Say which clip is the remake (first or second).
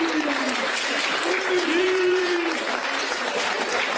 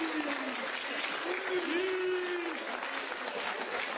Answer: first